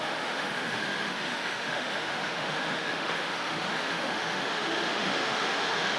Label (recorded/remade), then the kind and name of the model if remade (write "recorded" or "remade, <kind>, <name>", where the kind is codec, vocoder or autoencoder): remade, autoencoder, DAC-VAE